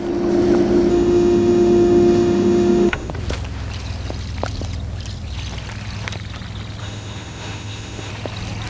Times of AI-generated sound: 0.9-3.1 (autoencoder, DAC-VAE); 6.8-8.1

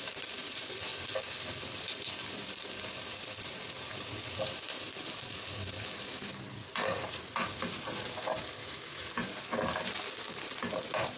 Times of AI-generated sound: 8.6-9.1 (autoencoder, DAC-VAE)

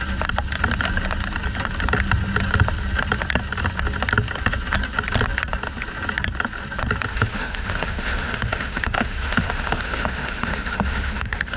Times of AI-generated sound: 7.1-11.6 (autoencoder, DAC-VAE)

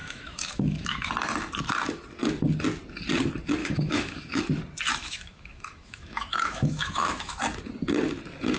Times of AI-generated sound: 0.0-1.1 (autoencoder, DAC-VAE); 3.6-4.4; 4.9-7.4

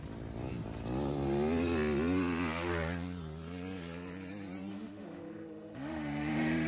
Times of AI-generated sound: 4.7-6.7 (autoencoder, DAC-VAE)

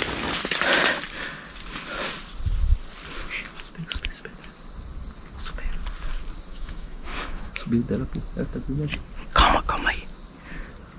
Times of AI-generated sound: 6.5-7.5 (autoencoder, DAC-VAE)